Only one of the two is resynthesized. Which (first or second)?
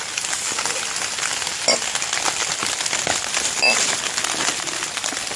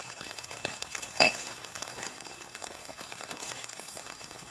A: second